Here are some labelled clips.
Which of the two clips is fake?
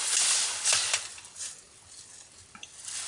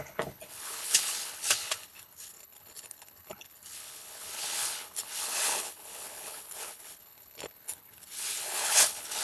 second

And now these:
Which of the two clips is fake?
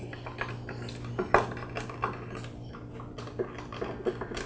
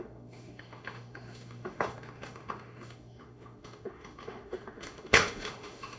second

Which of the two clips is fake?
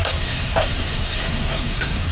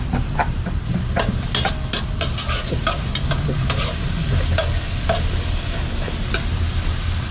first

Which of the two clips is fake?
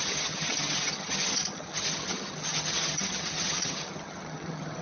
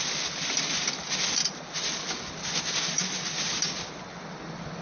first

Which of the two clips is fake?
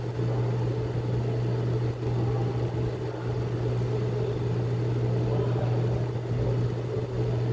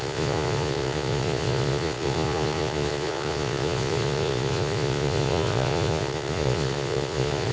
second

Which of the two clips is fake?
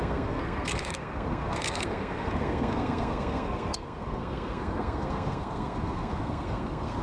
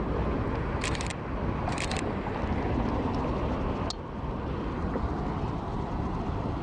first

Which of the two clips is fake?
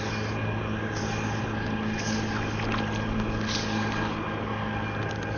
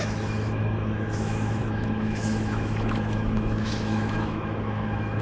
second